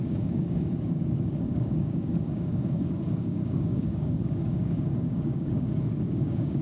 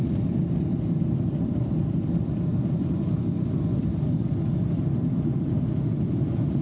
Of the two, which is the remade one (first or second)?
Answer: first